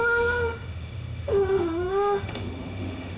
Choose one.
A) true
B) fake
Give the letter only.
B